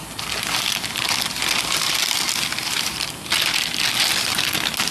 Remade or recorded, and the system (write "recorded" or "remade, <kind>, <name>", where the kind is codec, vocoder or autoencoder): recorded